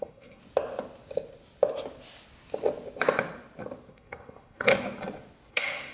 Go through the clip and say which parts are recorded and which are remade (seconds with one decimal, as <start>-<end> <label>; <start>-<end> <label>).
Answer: 0.0-0.4 remade; 0.4-3.9 recorded; 3.9-4.7 remade; 4.7-5.5 recorded; 5.5-5.9 remade